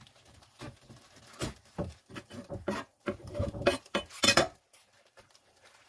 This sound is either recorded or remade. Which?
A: remade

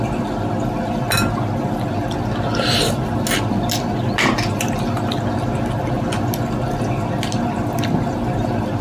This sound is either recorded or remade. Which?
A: recorded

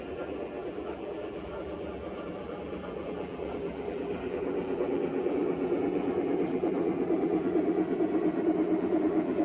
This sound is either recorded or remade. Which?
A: remade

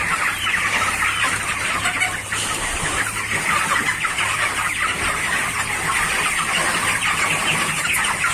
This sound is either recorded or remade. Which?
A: recorded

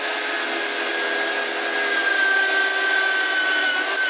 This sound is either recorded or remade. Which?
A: recorded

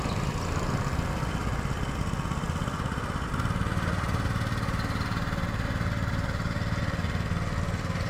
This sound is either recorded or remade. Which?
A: recorded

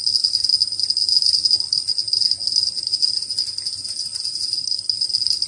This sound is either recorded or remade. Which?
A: recorded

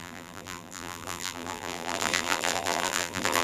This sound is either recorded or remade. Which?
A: remade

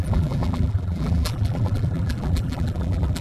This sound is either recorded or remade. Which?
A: remade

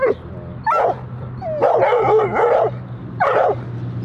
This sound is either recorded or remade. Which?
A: recorded